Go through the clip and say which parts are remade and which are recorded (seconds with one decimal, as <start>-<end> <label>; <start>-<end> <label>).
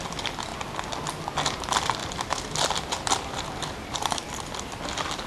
0.0-2.0 recorded; 2.0-4.5 remade; 4.5-5.3 recorded